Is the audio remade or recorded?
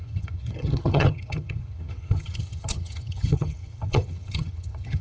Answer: remade